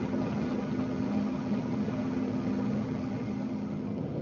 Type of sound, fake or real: fake